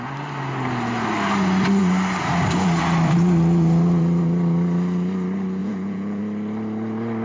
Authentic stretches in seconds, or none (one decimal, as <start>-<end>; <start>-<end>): 0.0-5.6; 6.2-7.2